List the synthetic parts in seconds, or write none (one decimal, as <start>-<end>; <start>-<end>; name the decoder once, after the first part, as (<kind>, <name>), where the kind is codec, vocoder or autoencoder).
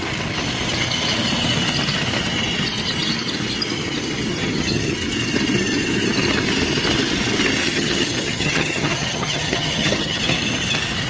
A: 4.3-4.9 (vocoder, HiFi-GAN); 7.6-10.2